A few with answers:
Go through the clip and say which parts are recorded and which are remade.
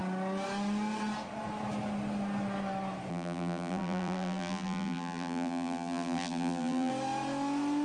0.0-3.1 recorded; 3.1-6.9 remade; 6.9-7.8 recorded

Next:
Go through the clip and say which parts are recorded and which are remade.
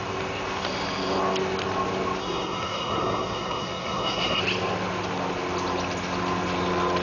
0.0-2.2 recorded; 2.2-4.4 remade; 4.4-7.0 recorded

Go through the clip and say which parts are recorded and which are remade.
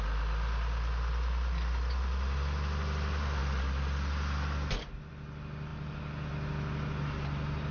0.0-7.7 recorded